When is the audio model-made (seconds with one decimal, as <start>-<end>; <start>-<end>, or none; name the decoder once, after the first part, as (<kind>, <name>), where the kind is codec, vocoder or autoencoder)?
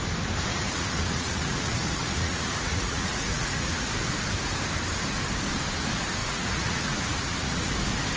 0.5-3.9 (vocoder, Vocos); 6.2-7.7